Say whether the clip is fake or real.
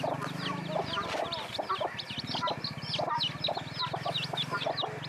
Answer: real